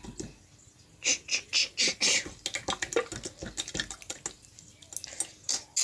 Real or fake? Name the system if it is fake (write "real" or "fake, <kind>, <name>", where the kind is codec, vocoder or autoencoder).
real